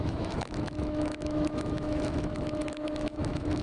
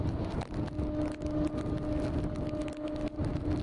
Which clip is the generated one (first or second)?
first